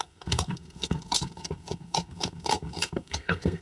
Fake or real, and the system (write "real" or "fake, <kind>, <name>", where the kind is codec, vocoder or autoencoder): fake, codec, SNAC